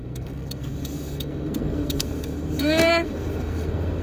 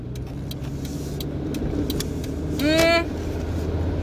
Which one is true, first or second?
second